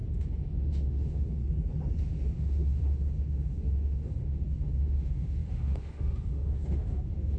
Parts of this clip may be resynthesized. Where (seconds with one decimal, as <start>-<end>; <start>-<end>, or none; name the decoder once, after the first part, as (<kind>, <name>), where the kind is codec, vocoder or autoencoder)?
0.0-1.4 (autoencoder, DAC-VAE); 2.0-7.4